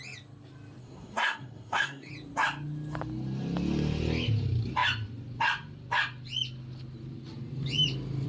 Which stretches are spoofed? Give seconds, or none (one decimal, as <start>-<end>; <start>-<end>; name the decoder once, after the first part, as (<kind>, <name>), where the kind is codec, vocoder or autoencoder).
0.8-2.1 (codec, SNAC)

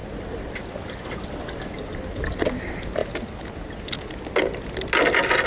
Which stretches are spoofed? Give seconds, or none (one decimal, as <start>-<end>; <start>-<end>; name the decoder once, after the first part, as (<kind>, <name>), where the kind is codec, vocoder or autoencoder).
none

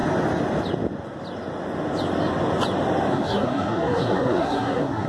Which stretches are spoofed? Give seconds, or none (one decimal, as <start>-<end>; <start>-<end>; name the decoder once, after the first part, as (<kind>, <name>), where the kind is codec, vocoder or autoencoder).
3.1-5.1 (codec, SNAC)

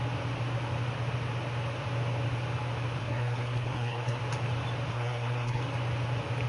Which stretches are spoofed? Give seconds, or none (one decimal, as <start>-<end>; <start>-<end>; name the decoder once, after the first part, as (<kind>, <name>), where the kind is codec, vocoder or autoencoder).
3.0-4.2 (codec, SNAC); 4.9-5.6

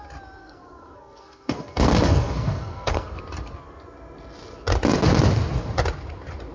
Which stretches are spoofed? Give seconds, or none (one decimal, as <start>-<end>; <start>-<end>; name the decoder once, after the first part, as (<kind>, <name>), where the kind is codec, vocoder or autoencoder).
0.4-3.2 (codec, SNAC)

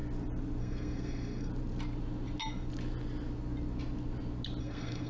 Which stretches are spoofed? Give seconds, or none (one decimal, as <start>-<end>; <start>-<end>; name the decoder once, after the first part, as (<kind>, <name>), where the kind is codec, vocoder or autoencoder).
0.6-1.5 (codec, SNAC); 4.6-5.1

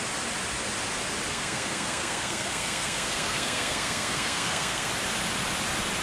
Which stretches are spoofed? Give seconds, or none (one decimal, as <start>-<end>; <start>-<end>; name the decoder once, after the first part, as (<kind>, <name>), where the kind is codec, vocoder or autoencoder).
1.3-4.9 (codec, SNAC)

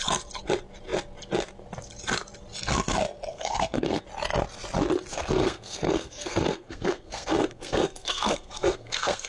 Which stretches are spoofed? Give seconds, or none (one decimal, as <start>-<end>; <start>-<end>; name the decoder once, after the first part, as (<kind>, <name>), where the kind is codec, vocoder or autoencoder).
3.3-4.0 (codec, SNAC); 5.1-9.3